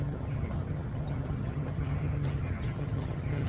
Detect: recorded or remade remade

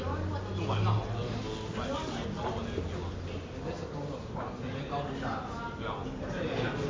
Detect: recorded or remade recorded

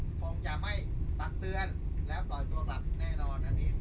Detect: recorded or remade recorded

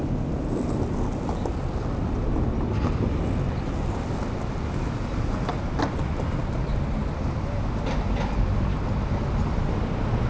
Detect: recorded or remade recorded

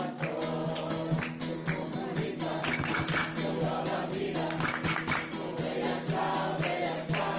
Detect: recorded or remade recorded